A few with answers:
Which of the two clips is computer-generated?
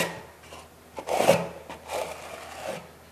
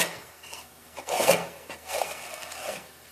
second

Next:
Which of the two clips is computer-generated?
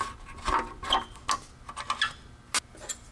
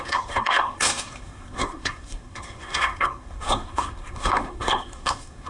second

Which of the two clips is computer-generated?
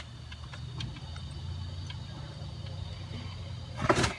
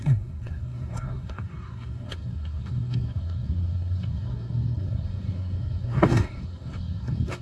second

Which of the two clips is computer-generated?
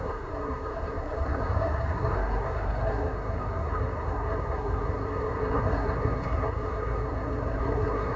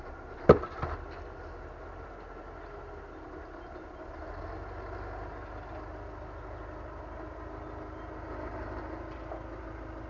first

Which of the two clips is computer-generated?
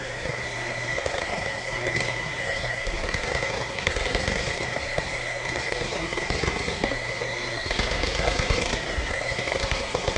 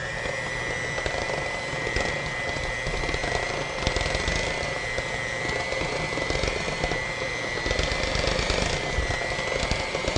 first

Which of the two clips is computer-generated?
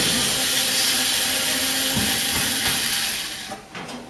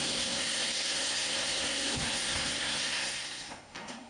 second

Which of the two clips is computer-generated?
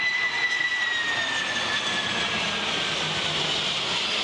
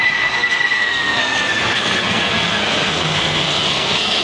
second